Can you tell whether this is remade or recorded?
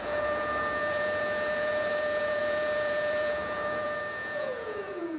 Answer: remade